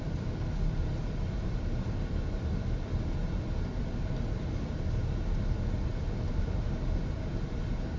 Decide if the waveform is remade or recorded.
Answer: recorded